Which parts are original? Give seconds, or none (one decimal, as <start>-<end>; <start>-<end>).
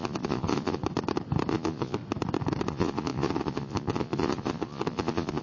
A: 0.8-1.5; 2.0-2.7